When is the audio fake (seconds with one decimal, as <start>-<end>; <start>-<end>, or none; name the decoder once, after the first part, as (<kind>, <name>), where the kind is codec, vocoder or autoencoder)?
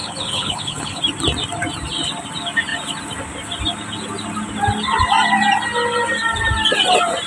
0.0-1.0 (codec, HILCodec)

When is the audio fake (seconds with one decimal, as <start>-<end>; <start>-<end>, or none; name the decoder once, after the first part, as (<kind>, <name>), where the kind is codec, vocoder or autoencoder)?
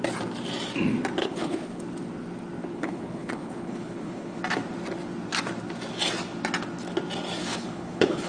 1.2-1.8 (codec, HILCodec); 2.7-4.4; 7.4-8.3